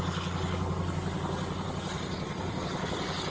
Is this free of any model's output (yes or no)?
yes